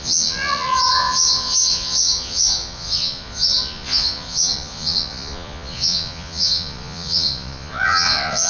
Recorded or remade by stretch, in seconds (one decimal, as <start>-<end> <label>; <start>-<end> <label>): 0.0-8.5 remade